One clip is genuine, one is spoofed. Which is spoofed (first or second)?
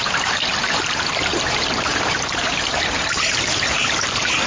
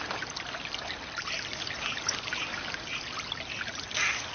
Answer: first